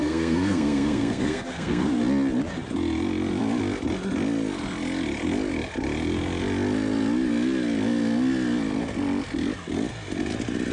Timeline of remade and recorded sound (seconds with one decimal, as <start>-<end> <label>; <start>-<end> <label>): 0.0-1.9 remade; 1.9-10.7 recorded